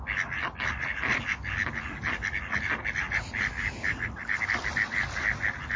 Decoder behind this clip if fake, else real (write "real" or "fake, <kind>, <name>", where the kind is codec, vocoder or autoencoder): real